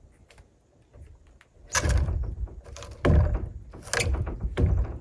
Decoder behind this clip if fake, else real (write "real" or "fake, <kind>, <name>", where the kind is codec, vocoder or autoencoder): real